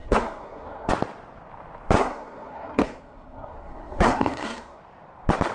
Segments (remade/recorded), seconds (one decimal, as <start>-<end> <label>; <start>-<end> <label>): 0.0-0.9 remade; 0.9-2.0 recorded; 2.0-4.8 remade; 4.8-5.5 recorded

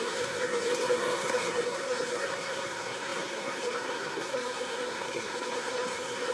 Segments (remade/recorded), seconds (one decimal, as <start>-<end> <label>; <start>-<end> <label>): 0.0-6.3 remade

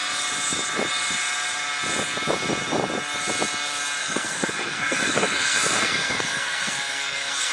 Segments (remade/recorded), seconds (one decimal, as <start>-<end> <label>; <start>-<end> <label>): 0.0-4.0 recorded; 4.0-7.5 remade

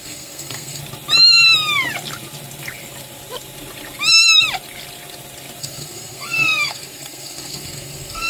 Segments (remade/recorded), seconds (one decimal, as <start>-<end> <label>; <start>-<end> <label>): 0.0-0.8 remade; 0.8-5.6 recorded; 5.6-8.3 remade

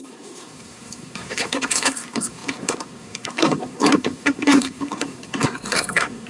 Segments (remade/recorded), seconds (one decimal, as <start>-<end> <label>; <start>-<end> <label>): 0.0-6.3 remade

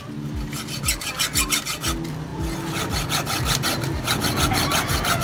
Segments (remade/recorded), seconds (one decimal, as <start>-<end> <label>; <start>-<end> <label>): 0.0-5.2 recorded

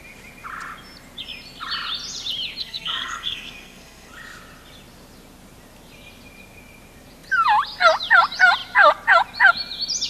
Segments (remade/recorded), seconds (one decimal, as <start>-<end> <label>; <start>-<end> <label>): 0.0-2.6 recorded; 2.6-4.1 remade; 4.1-10.1 recorded